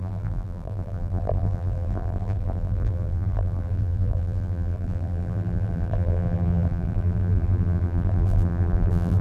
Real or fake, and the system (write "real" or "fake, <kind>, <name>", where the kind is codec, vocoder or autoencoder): fake, vocoder, BigVGAN v2